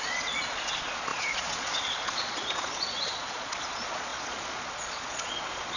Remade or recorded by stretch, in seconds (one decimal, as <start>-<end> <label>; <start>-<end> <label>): 0.0-5.8 remade